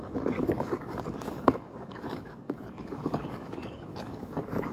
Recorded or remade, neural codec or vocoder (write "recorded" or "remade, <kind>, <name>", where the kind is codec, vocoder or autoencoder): remade, codec, DAC